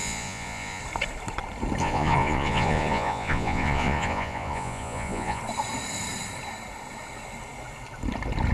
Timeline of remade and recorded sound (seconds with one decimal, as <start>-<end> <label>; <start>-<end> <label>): 0.0-0.8 remade; 0.8-1.8 recorded; 1.8-5.4 remade; 5.4-8.5 recorded